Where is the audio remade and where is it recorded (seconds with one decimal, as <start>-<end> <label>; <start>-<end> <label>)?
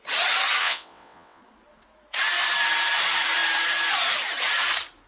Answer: 0.0-0.6 recorded; 0.6-1.4 remade; 1.4-5.1 recorded